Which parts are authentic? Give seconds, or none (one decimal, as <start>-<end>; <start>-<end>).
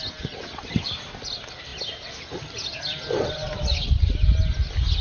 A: 0.0-5.0